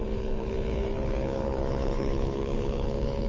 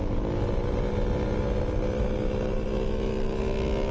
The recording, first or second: second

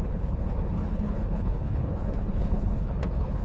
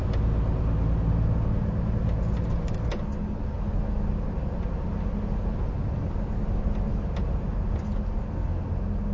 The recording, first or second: second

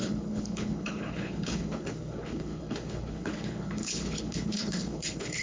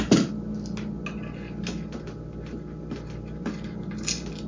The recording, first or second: second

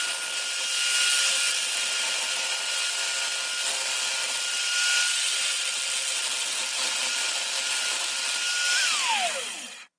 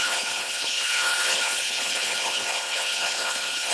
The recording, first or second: first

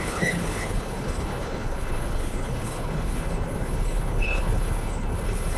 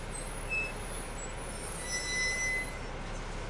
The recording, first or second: second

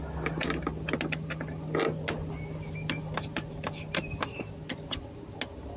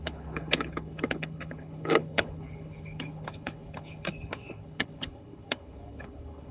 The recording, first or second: first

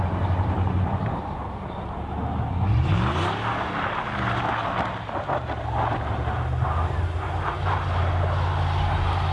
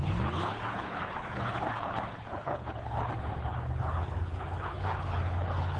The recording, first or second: first